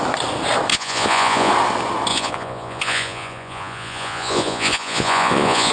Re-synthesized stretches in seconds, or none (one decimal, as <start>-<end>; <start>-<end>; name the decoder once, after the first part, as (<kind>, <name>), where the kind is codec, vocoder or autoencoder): 0.7-1.5 (vocoder, Vocos); 2.1-5.7